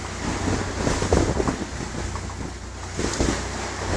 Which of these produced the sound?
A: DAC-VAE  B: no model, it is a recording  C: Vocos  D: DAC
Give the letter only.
B